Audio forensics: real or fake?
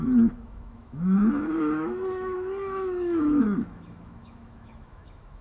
fake